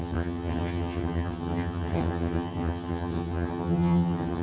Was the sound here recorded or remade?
remade